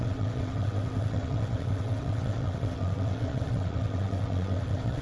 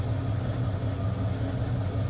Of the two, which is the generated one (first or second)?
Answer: first